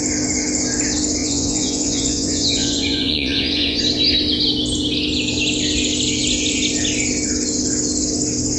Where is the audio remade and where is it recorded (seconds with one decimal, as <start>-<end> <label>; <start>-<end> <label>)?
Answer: 0.0-1.2 recorded; 1.2-3.8 remade; 3.8-8.6 recorded